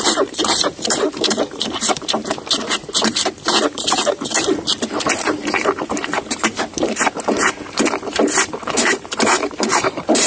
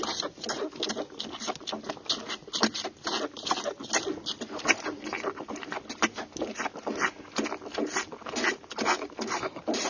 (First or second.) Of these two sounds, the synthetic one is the first